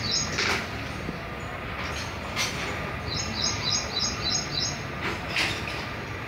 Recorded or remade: recorded